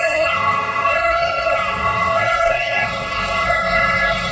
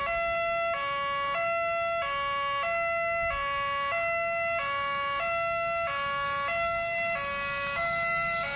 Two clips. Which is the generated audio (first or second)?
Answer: first